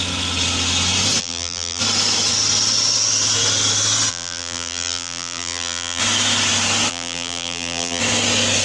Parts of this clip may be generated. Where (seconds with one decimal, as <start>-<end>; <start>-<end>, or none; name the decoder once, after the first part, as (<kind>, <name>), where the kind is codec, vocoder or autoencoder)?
1.2-1.8 (vocoder, BigVGAN v2); 4.1-6.0; 6.9-8.0

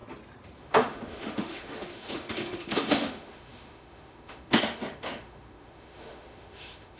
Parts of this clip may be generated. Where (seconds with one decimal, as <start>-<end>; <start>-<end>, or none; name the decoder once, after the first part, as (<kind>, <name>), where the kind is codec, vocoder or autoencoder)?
0.6-7.0 (autoencoder, DAC-VAE)

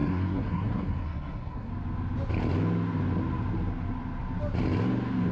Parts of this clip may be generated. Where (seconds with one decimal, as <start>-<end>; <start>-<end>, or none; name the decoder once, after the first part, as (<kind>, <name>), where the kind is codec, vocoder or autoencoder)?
0.0-1.7 (codec, SNAC)